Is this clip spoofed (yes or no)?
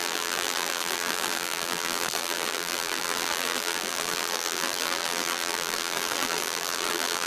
yes